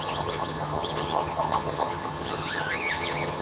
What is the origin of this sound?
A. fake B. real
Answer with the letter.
A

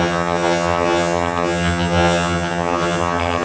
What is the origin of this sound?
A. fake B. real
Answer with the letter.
A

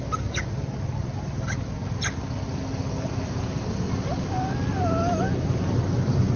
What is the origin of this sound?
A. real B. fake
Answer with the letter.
A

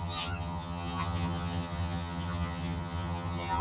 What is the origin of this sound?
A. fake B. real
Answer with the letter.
A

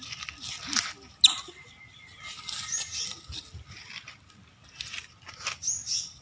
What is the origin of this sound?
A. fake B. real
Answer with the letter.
B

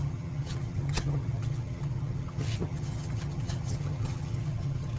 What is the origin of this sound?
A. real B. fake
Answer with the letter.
B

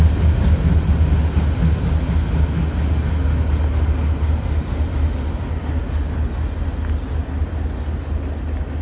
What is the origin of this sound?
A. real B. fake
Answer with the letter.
A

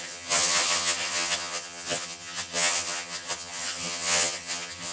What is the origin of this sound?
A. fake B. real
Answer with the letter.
A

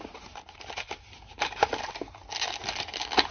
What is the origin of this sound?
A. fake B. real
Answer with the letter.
B